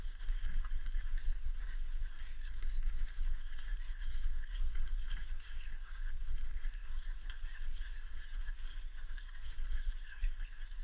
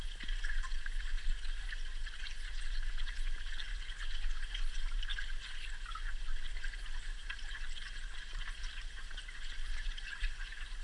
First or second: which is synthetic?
first